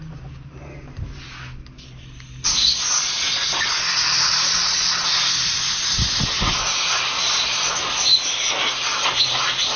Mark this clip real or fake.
real